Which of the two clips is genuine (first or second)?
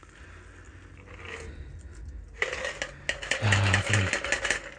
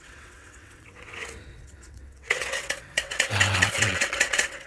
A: first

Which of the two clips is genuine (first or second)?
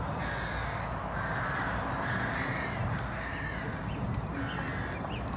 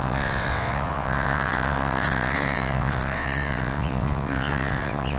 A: first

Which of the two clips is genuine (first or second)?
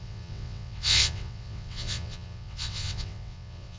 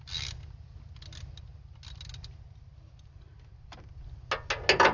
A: second